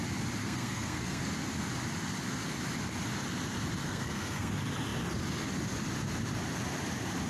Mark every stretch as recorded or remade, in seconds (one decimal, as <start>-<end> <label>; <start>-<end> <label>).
0.0-0.4 recorded; 0.4-1.2 remade; 1.2-3.8 recorded; 3.8-4.5 remade; 4.5-7.3 recorded